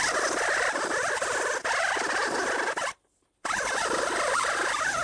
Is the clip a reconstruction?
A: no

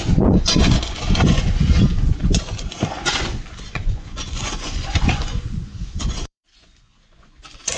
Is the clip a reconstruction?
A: yes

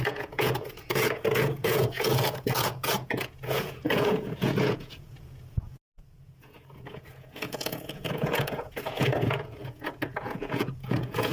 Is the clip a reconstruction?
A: yes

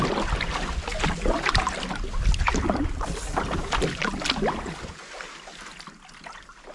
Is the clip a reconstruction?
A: no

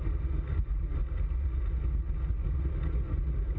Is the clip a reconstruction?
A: no